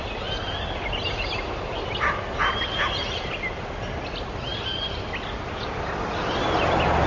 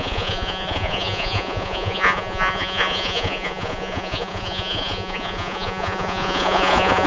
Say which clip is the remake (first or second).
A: second